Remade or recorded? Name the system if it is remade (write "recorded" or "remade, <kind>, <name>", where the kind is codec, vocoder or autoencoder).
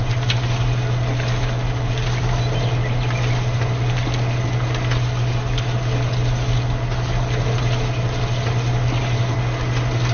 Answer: recorded